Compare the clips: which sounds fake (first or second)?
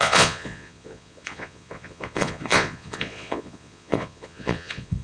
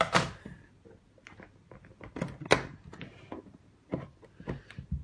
first